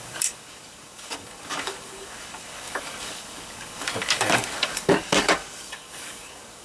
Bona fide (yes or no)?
no